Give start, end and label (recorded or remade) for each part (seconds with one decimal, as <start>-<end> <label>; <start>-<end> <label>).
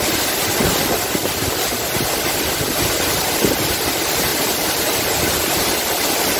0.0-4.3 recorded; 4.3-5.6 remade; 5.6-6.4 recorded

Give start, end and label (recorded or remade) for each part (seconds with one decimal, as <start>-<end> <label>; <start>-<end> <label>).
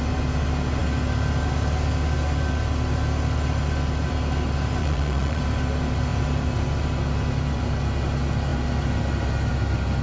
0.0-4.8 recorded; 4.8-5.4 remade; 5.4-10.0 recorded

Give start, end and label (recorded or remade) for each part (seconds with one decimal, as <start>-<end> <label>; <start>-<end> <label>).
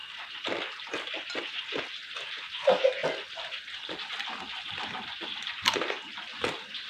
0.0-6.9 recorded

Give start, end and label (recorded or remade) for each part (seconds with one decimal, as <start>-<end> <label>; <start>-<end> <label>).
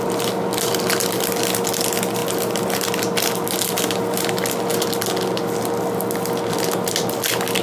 0.0-7.6 recorded